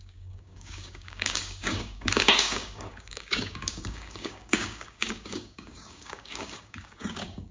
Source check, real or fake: fake